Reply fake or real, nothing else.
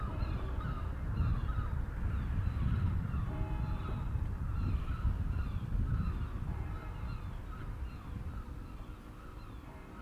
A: fake